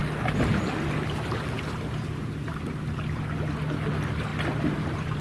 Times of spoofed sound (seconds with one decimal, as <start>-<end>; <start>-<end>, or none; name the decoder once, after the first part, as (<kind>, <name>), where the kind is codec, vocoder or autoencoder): none